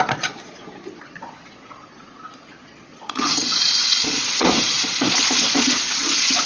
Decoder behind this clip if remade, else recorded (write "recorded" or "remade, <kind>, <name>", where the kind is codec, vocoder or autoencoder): remade, vocoder, Vocos